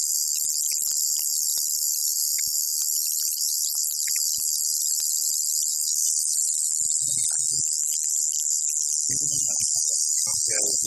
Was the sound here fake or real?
real